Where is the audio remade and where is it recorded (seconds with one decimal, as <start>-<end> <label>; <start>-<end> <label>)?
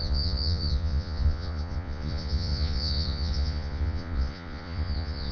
0.0-5.3 remade